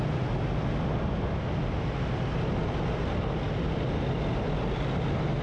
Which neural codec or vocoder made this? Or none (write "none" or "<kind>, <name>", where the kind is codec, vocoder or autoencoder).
none